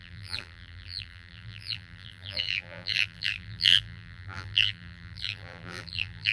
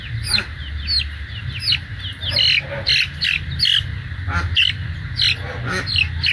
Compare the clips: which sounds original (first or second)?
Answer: second